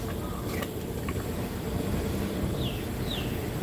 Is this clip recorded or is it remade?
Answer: recorded